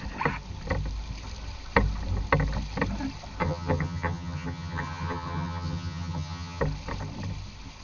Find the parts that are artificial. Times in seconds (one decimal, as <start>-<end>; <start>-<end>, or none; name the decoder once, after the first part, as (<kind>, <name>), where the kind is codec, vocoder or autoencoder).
3.4-6.6 (vocoder, HiFi-GAN)